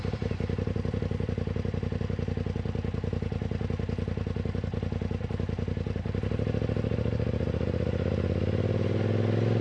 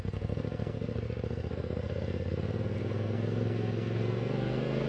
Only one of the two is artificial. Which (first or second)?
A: second